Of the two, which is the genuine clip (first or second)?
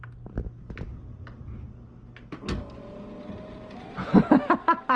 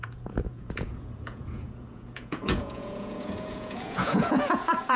first